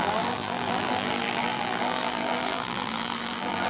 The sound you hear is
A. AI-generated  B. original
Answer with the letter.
A